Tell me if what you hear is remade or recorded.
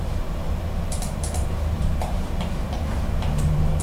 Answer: remade